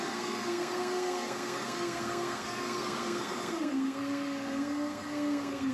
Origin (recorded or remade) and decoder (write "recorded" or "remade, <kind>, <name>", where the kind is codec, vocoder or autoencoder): remade, codec, SNAC